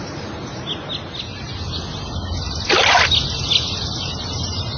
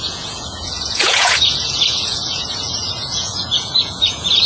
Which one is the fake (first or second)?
second